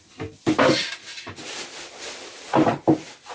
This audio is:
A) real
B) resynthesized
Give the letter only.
A